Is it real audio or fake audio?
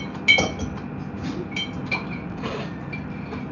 real